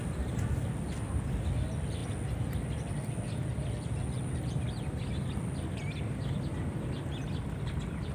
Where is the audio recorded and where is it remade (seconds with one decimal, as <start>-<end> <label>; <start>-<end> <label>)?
0.0-8.1 recorded